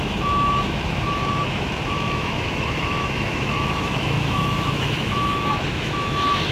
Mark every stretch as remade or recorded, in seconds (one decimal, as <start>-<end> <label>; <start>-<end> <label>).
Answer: 0.0-6.5 remade